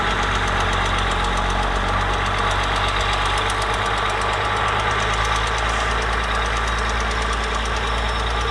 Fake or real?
real